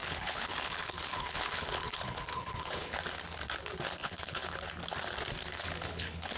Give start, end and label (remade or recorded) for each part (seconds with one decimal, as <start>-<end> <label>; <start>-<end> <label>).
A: 0.0-3.0 remade; 3.0-4.0 recorded; 4.0-4.7 remade; 4.7-5.4 recorded; 5.4-6.4 remade